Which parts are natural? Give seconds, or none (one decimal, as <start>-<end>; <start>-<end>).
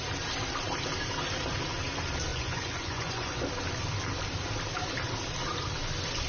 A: 0.0-2.3; 3.4-6.3